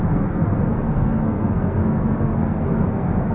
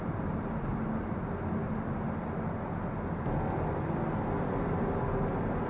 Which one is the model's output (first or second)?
first